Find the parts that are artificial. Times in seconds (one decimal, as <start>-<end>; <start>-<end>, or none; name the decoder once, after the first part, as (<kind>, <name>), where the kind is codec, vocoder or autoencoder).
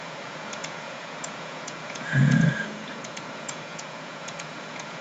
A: 0.0-5.0 (vocoder, Vocos)